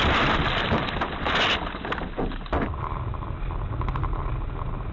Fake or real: real